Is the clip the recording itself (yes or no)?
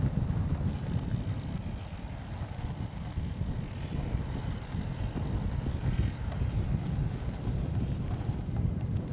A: yes